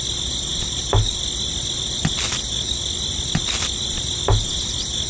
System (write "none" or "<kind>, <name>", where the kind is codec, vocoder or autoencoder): none